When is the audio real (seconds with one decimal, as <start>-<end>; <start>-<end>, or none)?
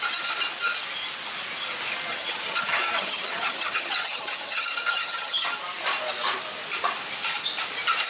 0.0-2.1; 5.5-8.1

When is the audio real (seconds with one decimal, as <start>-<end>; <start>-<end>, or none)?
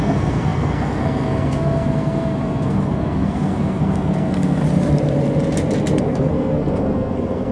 4.6-6.0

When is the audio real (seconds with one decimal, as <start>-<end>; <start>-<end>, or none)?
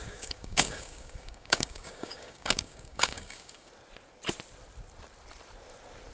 3.7-6.1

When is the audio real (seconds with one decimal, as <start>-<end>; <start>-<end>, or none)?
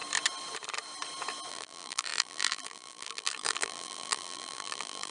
0.0-1.5